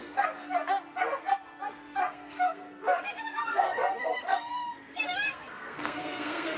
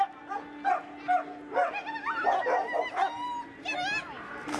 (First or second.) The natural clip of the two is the second